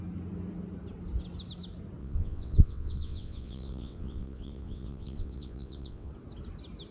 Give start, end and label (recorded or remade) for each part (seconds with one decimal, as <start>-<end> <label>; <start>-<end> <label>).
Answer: 0.0-2.0 recorded; 2.0-6.1 remade; 6.1-6.9 recorded